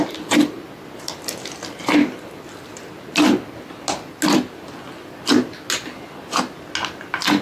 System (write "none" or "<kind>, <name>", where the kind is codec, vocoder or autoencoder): none